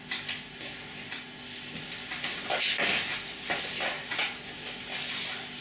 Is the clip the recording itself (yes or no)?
yes